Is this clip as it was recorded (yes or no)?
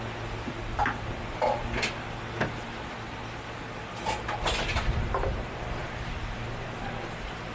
yes